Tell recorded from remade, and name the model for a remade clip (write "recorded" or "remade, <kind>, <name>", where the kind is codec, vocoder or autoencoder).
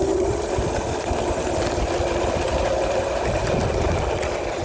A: recorded